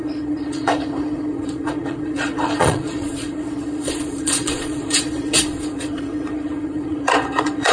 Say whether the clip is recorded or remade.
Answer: remade